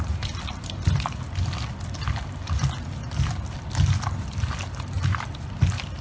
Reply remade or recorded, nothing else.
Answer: recorded